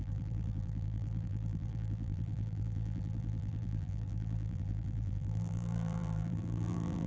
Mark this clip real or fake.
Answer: fake